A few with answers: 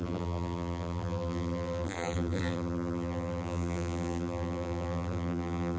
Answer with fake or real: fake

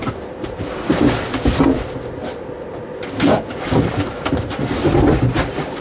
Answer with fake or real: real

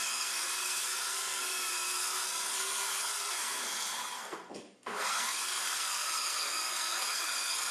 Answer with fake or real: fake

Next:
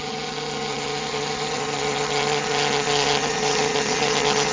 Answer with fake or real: fake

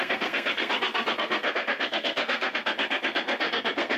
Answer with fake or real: fake